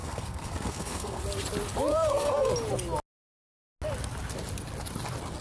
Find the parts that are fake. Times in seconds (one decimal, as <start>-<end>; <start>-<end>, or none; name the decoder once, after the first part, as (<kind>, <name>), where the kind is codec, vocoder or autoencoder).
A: 0.0-1.2 (codec, SNAC); 1.9-2.5